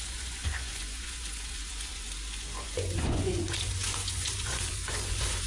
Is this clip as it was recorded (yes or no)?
no